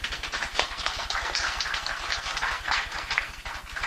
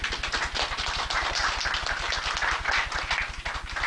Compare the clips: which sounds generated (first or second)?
first